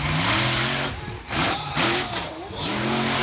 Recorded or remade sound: recorded